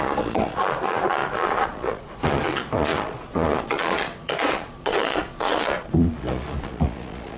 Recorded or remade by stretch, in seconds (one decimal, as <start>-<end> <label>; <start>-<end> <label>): 0.0-7.4 remade